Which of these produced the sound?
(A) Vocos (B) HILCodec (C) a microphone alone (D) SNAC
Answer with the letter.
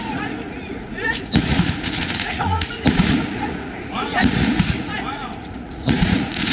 A